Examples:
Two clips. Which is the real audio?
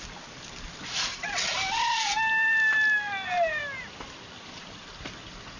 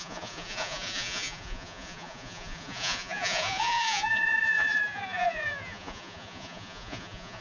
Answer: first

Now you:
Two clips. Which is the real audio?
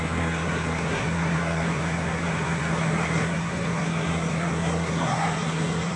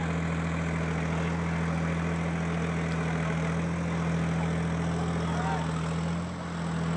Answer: second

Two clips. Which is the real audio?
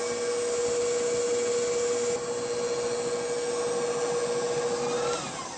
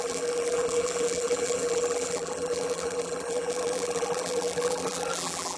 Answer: first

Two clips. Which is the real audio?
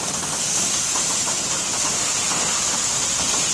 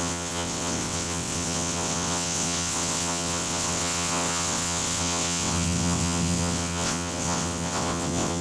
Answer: first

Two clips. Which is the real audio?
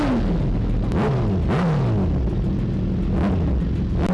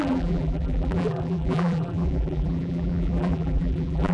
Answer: first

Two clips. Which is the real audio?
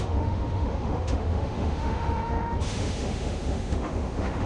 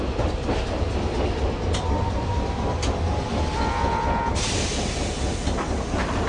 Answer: second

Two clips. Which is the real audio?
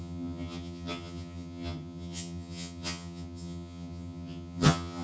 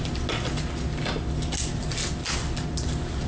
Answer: second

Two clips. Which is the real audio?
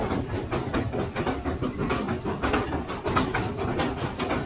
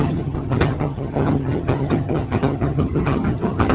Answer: first